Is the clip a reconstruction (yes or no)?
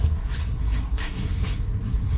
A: yes